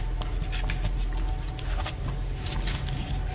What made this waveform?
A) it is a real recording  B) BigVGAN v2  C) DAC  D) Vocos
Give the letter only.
A